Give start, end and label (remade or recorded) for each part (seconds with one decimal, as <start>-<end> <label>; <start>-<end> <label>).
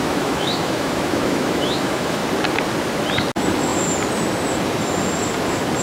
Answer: 0.0-2.2 remade; 2.2-5.8 recorded